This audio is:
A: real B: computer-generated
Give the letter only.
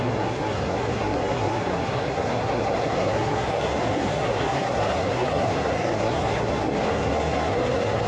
B